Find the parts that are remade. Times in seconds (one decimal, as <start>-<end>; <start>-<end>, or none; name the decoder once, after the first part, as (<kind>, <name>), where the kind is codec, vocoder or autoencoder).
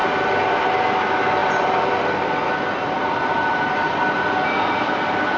0.0-0.6 (vocoder, BigVGAN v2); 1.4-4.3